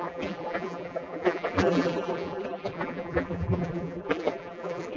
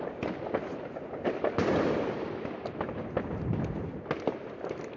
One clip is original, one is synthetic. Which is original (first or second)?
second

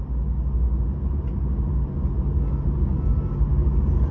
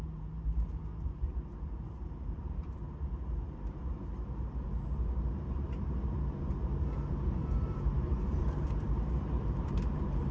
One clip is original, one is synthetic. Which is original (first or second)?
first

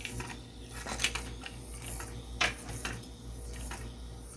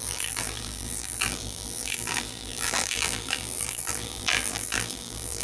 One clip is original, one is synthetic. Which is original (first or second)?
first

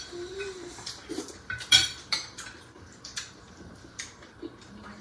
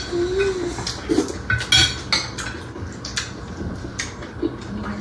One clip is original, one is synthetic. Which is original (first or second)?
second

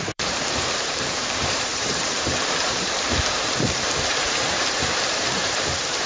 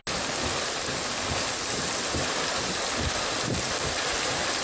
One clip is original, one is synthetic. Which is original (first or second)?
second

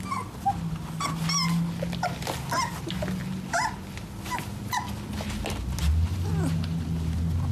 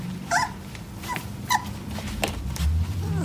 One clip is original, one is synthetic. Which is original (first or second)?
first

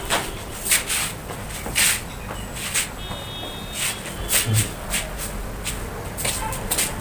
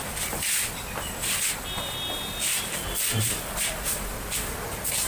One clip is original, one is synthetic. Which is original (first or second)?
first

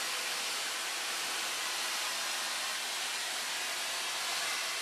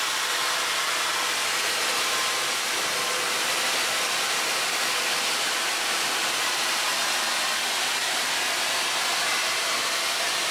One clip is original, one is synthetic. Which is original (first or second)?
first